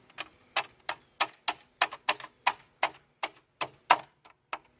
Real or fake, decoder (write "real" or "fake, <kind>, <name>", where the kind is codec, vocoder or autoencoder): real